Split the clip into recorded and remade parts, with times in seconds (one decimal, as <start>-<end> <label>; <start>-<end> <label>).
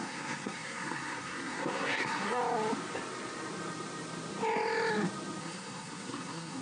0.0-2.4 remade; 2.4-5.4 recorded; 5.4-6.6 remade